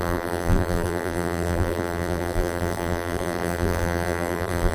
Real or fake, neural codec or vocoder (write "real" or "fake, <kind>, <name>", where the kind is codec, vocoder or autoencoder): fake, vocoder, BigVGAN v2